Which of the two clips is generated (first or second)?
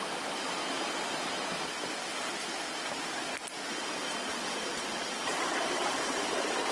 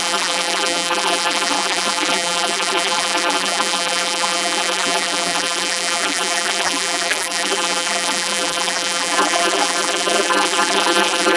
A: second